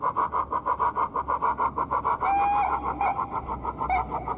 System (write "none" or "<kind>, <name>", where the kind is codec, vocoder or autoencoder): none